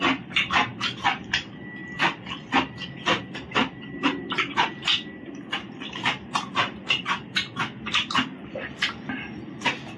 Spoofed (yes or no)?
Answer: no